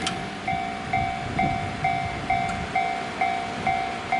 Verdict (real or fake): real